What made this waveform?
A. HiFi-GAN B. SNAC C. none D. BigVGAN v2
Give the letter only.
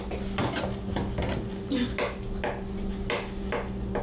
C